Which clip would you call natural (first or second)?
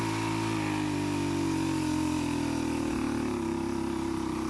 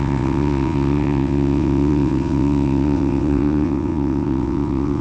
first